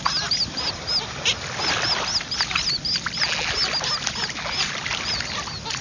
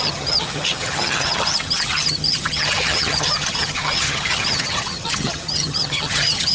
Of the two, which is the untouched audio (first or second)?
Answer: first